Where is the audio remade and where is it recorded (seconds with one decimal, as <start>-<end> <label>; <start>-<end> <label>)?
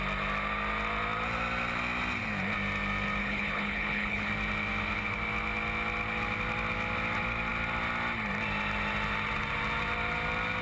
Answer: 0.0-3.2 recorded; 3.2-4.3 remade; 4.3-10.6 recorded